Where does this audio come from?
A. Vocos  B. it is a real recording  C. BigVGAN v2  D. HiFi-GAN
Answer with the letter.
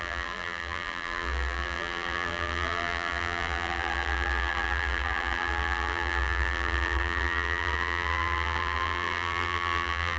C